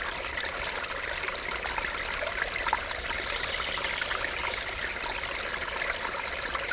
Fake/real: real